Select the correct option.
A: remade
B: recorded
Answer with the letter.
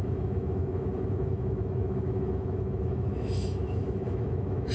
A